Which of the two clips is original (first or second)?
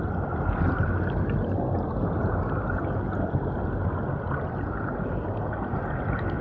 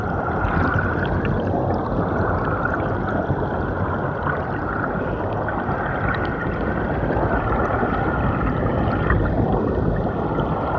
first